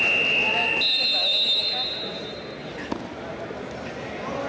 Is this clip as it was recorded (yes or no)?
yes